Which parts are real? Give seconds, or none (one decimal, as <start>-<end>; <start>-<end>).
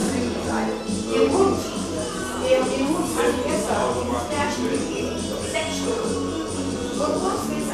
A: 0.0-6.8